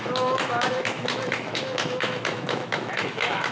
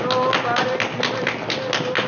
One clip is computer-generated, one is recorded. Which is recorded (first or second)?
second